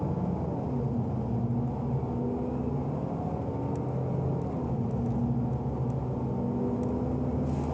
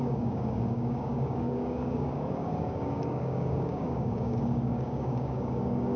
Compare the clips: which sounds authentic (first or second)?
first